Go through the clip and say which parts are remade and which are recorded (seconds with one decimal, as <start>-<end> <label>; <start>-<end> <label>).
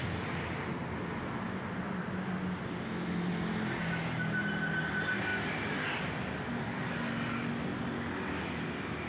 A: 0.0-5.3 recorded; 5.3-8.1 remade; 8.1-9.1 recorded